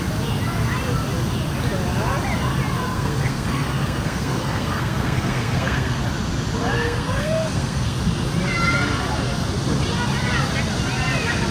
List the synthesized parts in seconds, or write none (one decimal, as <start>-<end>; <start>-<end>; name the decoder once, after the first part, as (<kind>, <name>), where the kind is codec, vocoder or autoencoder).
2.9-6.0 (codec, SNAC); 6.6-8.0